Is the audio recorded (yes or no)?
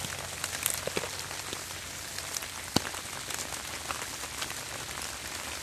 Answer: yes